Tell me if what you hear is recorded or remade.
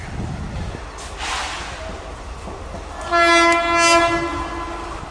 recorded